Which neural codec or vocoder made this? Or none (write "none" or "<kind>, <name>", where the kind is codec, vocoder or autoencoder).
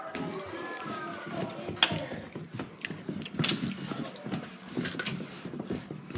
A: none